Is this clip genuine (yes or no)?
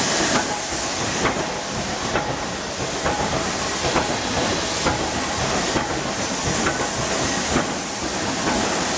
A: yes